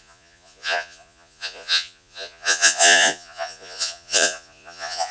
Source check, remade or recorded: remade